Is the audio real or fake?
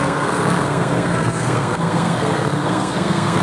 fake